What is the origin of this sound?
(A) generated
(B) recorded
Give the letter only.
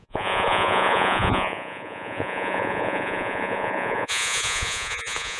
A